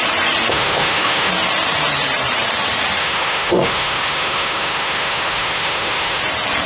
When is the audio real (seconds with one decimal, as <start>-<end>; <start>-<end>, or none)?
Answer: 0.0-0.5; 1.3-3.0; 6.2-6.7